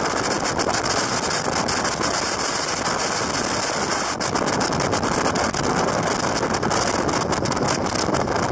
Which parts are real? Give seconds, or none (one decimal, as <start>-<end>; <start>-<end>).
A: 0.0-8.5